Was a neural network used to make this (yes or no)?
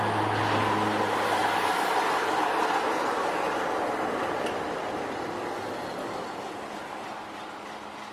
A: no